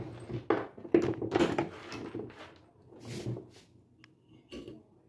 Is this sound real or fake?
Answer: real